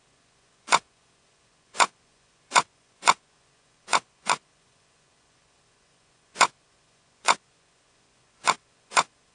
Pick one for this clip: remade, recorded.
remade